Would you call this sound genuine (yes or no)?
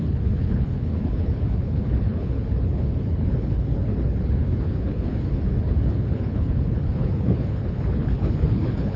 no